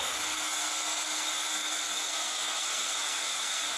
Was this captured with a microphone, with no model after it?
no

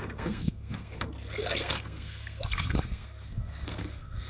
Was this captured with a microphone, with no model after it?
no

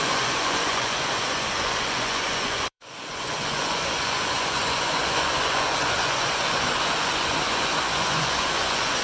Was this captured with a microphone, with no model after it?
no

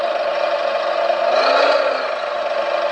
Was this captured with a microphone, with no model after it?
yes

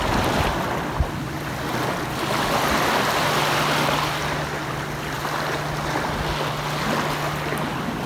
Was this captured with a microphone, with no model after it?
yes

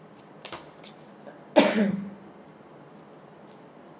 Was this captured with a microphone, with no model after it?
yes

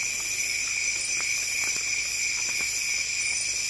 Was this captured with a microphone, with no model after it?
yes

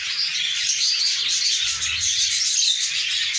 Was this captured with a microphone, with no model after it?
yes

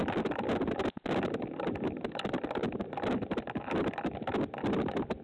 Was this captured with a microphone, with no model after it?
yes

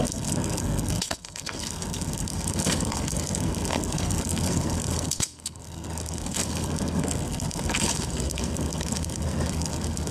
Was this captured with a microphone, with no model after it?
no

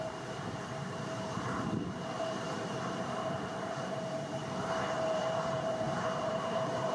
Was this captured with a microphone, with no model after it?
no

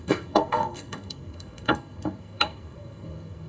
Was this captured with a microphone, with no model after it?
no